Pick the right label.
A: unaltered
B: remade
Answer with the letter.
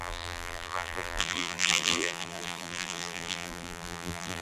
B